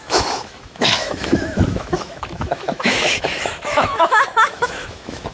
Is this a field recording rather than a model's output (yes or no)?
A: no